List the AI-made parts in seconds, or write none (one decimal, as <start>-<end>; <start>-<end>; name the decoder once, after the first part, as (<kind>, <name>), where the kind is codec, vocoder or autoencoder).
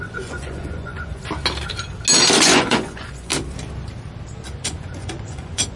0.0-1.2 (vocoder, Vocos); 2.4-3.3; 4.6-5.8